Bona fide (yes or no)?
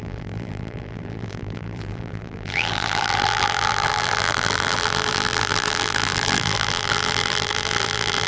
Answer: no